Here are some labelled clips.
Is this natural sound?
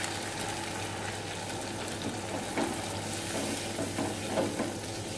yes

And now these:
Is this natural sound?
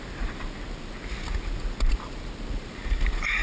yes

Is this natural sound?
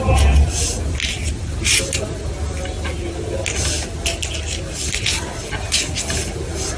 yes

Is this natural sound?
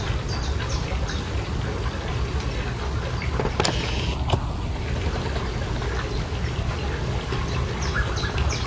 yes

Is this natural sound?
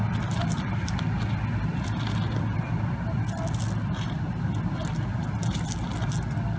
yes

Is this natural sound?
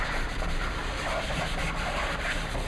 no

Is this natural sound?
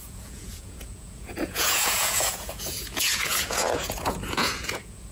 no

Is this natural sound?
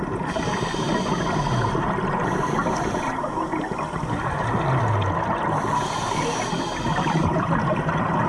yes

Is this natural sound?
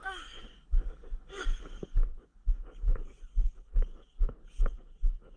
no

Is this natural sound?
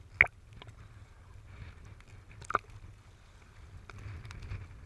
yes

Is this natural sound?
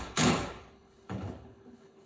no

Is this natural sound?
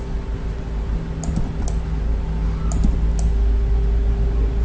yes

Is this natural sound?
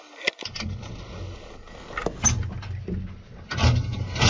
yes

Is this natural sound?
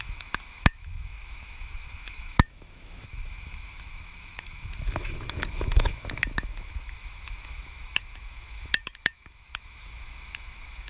no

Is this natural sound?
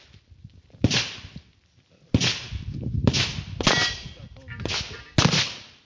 yes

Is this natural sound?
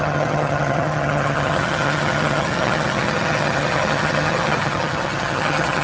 no